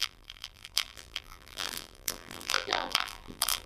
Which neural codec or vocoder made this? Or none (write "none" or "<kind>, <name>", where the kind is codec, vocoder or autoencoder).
vocoder, BigVGAN v2